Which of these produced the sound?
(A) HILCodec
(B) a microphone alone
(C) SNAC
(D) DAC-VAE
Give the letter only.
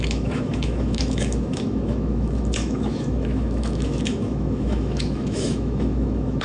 D